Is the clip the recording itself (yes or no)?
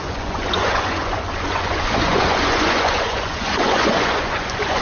no